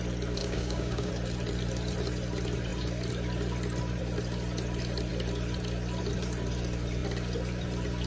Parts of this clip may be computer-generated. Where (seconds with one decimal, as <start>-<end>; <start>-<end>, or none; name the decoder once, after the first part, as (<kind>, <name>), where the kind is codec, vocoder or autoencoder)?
0.4-1.1 (codec, DAC)